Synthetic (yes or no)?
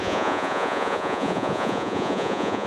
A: yes